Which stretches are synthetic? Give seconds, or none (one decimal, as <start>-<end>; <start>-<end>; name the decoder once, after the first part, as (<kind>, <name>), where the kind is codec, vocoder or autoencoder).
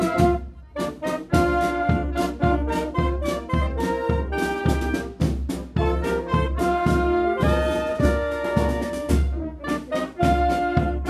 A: 7.9-9.1 (codec, SNAC)